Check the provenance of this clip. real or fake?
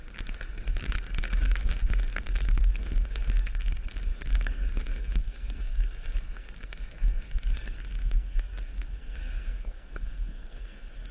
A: fake